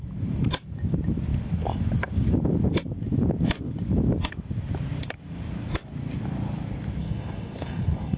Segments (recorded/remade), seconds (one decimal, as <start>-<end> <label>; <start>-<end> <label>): 0.0-7.0 recorded; 7.0-8.2 remade